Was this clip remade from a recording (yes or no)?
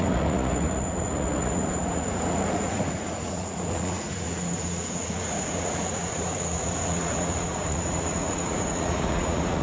yes